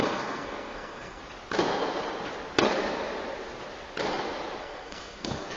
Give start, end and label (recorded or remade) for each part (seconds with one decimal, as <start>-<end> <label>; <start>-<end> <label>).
0.0-1.2 remade; 1.2-4.6 recorded; 4.6-5.6 remade